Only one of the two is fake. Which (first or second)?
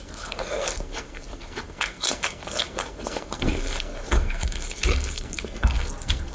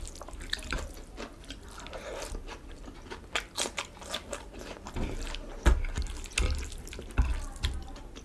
first